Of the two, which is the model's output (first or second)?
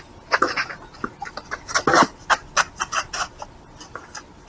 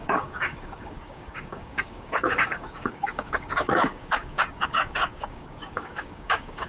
second